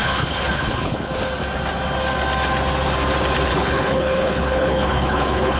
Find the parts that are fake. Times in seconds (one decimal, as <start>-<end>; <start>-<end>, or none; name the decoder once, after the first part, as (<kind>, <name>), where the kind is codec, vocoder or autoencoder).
0.0-1.1 (codec, HILCodec); 3.5-5.6